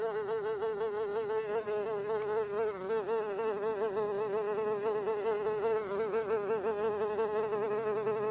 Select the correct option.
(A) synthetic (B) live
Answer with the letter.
B